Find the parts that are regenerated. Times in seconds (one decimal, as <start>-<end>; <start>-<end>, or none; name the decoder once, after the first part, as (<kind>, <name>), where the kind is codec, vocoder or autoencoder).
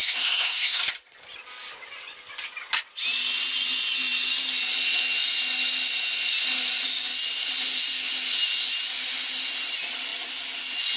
0.0-0.8 (codec, SNAC)